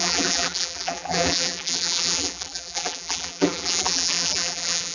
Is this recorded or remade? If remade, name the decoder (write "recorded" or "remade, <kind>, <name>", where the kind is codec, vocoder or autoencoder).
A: remade, vocoder, BigVGAN v2